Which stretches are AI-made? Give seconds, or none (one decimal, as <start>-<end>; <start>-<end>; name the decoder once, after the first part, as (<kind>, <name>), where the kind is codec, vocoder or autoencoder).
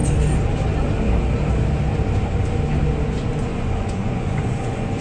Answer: 3.5-5.0 (vocoder, Vocos)